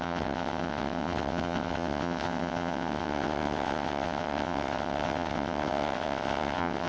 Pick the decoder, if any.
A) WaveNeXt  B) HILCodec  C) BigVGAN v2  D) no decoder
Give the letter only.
A